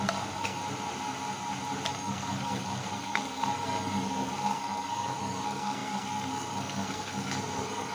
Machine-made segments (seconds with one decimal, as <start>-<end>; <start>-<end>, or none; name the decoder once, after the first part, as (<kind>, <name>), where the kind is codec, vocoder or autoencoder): 0.0-0.6 (codec, SNAC); 1.9-7.9